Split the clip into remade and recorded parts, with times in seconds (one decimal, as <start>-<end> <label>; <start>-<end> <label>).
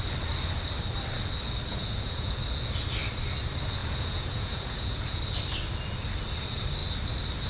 0.0-1.7 recorded; 1.7-2.4 remade; 2.4-3.8 recorded; 3.8-5.2 remade; 5.2-7.5 recorded